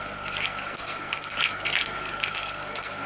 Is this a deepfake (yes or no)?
yes